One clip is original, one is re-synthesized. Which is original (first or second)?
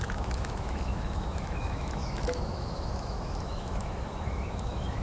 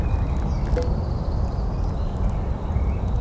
second